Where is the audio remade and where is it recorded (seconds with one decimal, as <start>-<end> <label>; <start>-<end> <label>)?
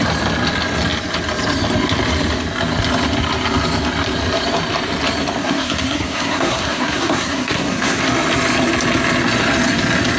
0.0-5.4 recorded; 5.4-8.0 remade; 8.0-10.2 recorded